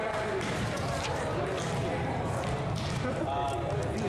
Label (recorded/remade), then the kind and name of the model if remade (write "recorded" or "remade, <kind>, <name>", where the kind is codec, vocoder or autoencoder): recorded